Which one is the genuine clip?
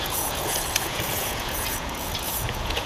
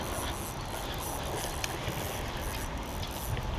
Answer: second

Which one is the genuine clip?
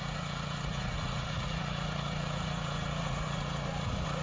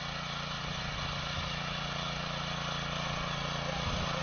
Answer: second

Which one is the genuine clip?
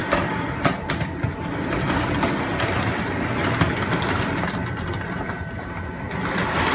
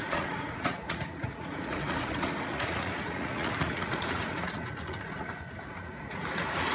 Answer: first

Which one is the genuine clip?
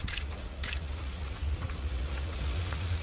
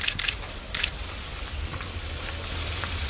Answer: second